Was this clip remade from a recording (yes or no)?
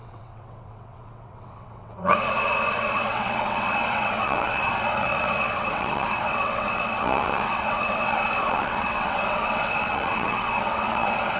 yes